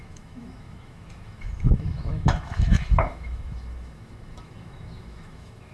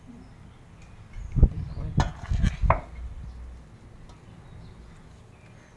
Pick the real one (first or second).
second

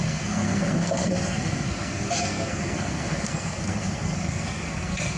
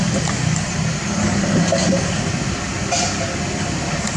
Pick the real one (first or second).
second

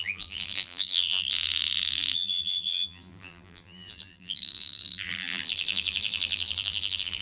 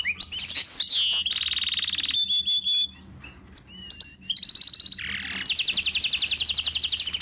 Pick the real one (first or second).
second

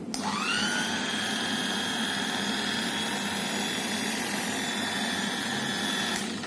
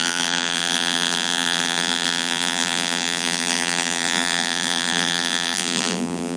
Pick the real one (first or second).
first